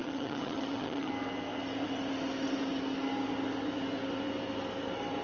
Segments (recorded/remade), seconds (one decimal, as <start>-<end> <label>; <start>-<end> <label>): 0.0-1.1 remade; 1.1-5.2 recorded